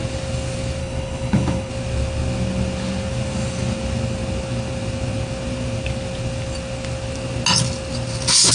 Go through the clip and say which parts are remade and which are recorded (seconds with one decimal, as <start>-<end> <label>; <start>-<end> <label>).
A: 0.0-0.8 recorded; 0.8-1.7 remade; 1.7-8.5 recorded